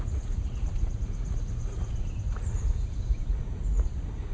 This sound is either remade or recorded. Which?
remade